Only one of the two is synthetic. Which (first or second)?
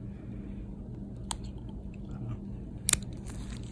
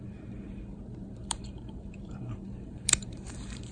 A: second